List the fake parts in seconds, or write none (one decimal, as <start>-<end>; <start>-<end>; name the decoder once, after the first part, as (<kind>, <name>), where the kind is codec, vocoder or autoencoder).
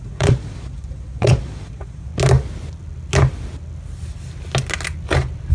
0.0-2.1 (vocoder, Vocos)